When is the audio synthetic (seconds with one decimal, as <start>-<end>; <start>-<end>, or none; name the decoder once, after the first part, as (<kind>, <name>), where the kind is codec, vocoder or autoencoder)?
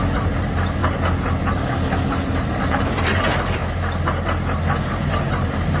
0.0-0.8 (vocoder, BigVGAN v2); 2.5-3.6; 4.8-5.8